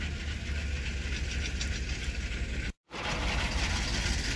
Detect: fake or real real